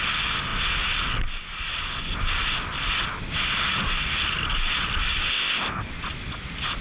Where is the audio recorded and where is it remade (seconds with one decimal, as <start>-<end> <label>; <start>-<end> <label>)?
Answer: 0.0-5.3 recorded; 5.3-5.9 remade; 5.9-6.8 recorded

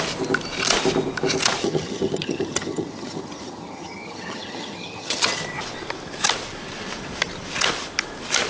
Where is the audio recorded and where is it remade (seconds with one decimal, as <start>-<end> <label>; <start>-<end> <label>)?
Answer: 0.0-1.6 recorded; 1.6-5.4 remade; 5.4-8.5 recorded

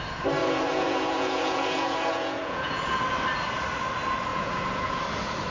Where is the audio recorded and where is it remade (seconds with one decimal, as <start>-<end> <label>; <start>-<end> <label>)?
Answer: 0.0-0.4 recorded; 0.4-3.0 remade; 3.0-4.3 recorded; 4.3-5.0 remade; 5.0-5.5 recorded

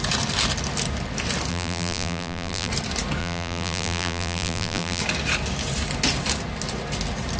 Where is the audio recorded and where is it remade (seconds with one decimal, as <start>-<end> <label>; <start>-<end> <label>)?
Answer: 0.0-1.5 recorded; 1.5-2.7 remade; 2.7-3.2 recorded; 3.2-5.0 remade; 5.0-7.4 recorded

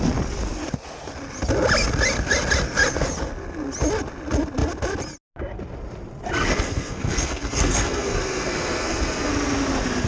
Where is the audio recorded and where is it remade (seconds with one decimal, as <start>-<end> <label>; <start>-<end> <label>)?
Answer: 0.0-6.5 recorded; 6.5-9.3 remade; 9.3-10.1 recorded

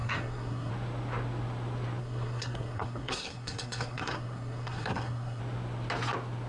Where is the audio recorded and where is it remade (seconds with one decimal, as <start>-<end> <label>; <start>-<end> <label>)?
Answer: 0.0-0.7 remade; 0.7-2.0 recorded; 2.0-5.4 remade; 5.4-6.5 recorded